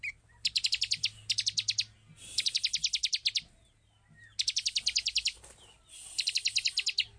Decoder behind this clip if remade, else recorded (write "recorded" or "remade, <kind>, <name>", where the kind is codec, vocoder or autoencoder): recorded